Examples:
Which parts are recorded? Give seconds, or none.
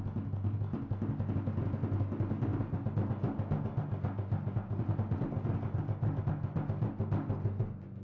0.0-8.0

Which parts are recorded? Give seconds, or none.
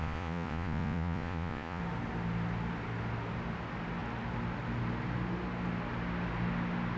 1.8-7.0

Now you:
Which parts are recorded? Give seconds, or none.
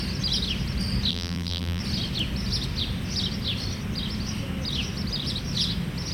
0.0-1.1; 1.8-6.1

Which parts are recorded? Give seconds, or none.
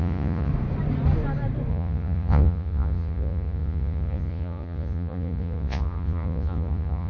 0.5-1.7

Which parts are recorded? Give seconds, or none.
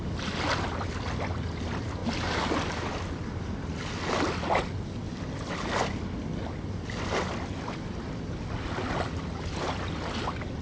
0.0-10.6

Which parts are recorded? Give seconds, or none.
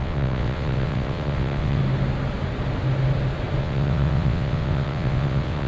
1.8-3.6